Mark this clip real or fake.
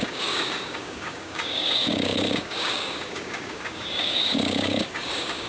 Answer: fake